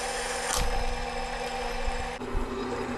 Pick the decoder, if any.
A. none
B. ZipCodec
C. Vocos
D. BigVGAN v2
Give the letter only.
A